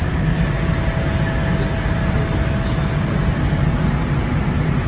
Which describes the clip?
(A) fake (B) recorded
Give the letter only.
B